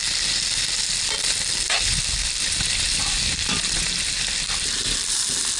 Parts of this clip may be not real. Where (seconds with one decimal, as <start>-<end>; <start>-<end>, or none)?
none